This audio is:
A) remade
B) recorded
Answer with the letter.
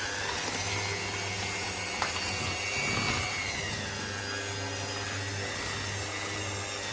B